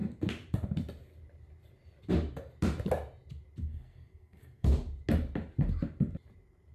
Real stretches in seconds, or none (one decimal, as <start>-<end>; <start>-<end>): 0.0-3.7; 4.7-6.7